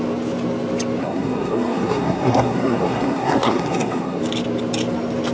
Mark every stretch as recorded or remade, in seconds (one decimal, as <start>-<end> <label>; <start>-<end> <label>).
0.0-1.0 recorded; 1.0-4.2 remade; 4.2-5.3 recorded